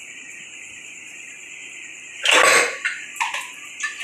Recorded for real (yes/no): yes